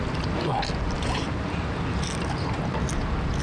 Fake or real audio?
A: real